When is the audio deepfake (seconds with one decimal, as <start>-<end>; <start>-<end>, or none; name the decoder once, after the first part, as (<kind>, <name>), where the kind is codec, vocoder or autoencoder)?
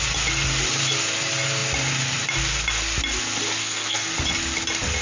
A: 3.6-4.1 (codec, SNAC)